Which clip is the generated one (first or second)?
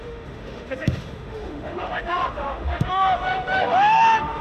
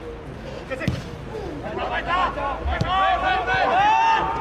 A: first